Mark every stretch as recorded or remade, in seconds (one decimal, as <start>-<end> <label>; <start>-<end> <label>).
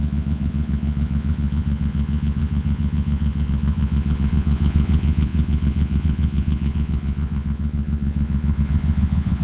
0.0-9.4 remade